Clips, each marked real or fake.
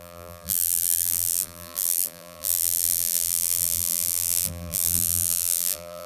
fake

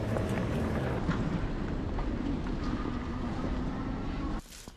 real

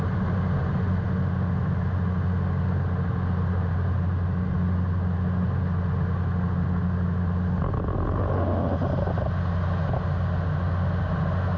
real